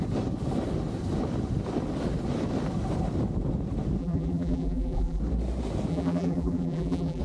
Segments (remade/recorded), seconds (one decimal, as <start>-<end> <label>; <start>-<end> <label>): 0.0-4.0 recorded; 4.0-5.2 remade; 5.2-5.9 recorded; 5.9-7.2 remade